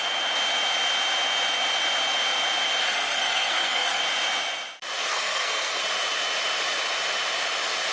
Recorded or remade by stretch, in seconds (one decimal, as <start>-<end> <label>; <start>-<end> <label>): 0.0-2.8 recorded; 2.8-4.0 remade; 4.0-5.1 recorded; 5.1-5.8 remade; 5.8-7.9 recorded